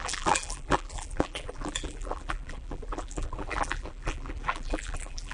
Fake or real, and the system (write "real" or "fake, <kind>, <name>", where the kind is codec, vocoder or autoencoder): fake, vocoder, BigVGAN v2